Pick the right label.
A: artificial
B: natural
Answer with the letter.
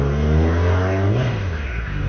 A